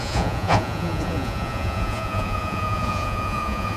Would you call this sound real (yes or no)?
no